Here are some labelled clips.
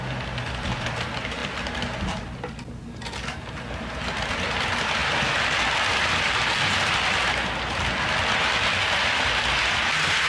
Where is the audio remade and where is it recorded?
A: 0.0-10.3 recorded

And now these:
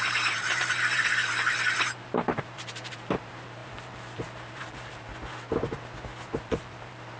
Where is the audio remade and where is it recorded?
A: 0.0-5.1 remade; 5.1-6.4 recorded; 6.4-7.2 remade

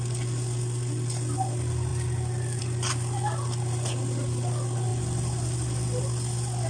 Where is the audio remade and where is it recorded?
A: 0.0-6.7 recorded